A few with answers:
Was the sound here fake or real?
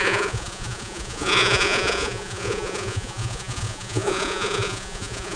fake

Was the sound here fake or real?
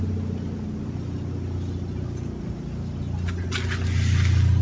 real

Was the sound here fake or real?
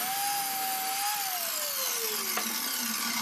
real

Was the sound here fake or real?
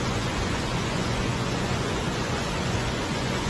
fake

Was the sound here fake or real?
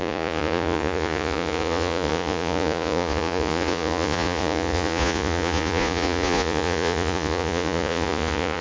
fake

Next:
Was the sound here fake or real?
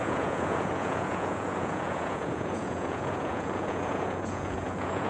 fake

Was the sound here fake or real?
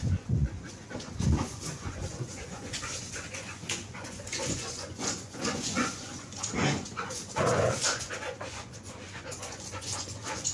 fake